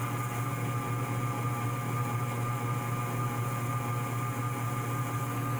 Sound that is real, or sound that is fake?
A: real